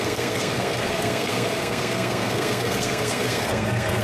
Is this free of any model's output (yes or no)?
no